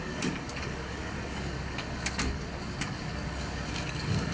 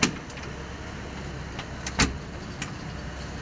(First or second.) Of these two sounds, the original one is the second